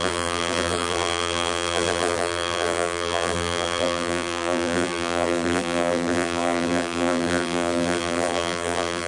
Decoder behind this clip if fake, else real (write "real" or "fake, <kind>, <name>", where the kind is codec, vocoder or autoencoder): fake, vocoder, BigVGAN v2